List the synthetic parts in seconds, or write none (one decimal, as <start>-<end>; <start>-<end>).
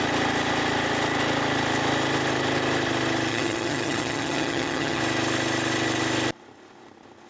3.3-5.0